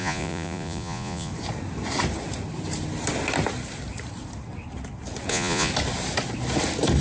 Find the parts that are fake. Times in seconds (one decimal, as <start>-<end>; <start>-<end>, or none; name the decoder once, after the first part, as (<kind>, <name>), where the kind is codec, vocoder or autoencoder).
0.0-1.3 (vocoder, Vocos); 5.3-5.7